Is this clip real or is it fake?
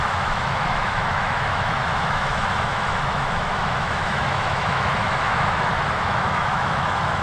fake